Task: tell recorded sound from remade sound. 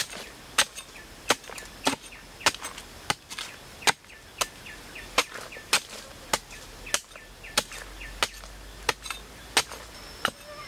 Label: recorded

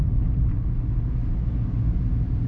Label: recorded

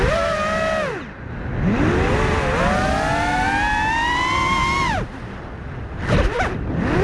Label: recorded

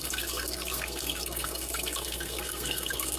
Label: remade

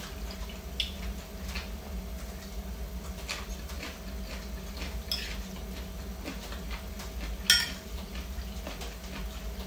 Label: recorded